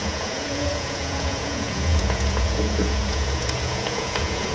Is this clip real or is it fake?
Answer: fake